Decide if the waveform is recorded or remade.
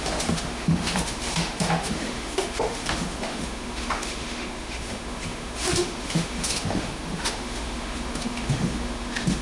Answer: remade